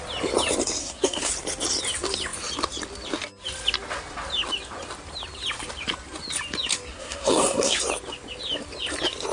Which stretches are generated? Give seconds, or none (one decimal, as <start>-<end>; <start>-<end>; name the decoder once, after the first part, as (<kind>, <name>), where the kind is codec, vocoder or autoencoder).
0.8-1.3 (codec, SNAC); 6.9-7.8